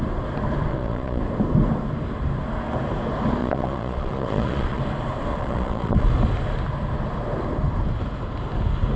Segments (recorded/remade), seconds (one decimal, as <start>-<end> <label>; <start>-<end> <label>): 0.0-0.7 recorded; 0.7-1.2 remade; 1.2-3.4 recorded; 3.4-4.8 remade; 4.8-5.3 recorded; 5.3-6.1 remade; 6.1-9.0 recorded